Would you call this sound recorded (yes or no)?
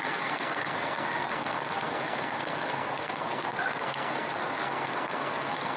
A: no